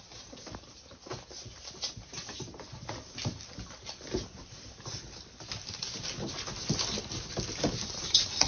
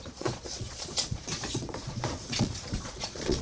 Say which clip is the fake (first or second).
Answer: second